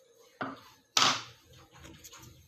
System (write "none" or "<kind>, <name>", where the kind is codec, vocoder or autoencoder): none